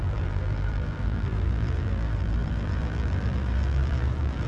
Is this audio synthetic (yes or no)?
yes